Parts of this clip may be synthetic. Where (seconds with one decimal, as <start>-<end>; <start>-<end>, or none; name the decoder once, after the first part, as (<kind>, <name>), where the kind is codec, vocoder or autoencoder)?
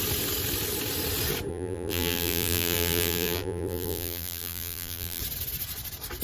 1.5-5.2 (vocoder, BigVGAN v2)